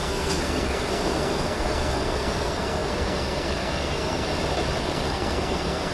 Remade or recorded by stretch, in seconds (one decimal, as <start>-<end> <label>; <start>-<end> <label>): 0.0-4.3 remade; 4.3-4.8 recorded; 4.8-5.9 remade